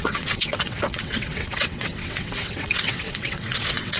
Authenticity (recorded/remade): remade